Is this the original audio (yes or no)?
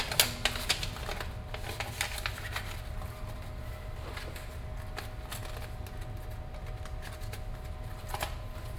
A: yes